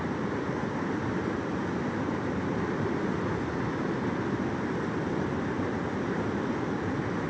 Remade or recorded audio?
recorded